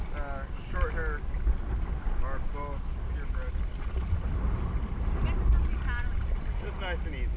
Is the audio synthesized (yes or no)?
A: no